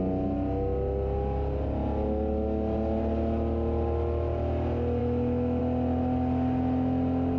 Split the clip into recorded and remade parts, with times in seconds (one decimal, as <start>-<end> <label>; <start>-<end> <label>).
0.0-5.0 recorded; 5.0-5.6 remade; 5.6-7.4 recorded